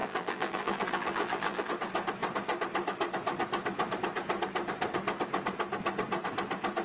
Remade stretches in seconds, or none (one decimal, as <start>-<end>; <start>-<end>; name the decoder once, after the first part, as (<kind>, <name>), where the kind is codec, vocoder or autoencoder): 0.0-1.7 (vocoder, BigVGAN v2)